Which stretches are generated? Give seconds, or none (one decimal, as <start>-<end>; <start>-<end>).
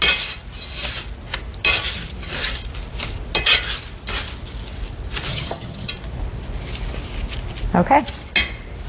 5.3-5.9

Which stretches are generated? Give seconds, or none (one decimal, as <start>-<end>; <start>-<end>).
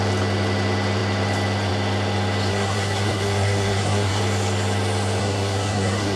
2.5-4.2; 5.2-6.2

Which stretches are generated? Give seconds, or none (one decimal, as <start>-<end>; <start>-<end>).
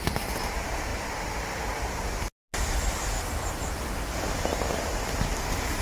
none